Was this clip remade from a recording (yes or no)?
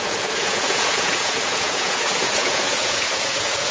yes